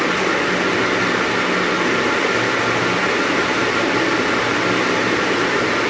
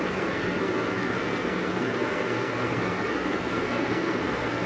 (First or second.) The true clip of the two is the first